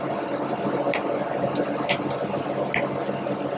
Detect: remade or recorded recorded